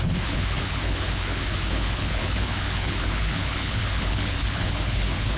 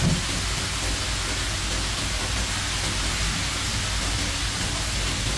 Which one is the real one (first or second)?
second